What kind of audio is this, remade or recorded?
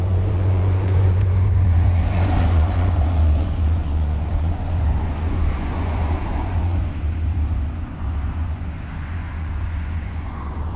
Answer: remade